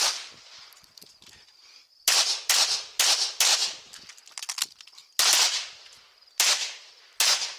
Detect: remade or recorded recorded